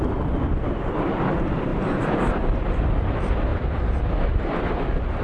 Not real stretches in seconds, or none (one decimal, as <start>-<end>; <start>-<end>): none